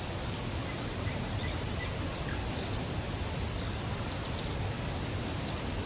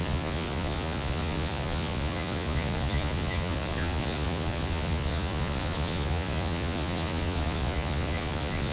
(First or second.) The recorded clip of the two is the first